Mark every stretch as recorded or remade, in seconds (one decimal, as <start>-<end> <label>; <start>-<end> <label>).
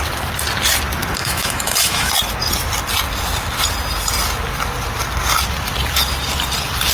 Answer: 0.0-1.2 recorded; 1.2-2.1 remade; 2.1-6.9 recorded